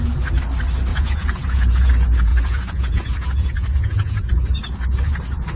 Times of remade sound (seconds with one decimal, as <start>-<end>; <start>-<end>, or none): 0.9-1.9; 2.3-4.3